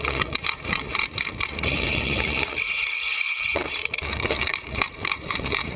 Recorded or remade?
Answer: remade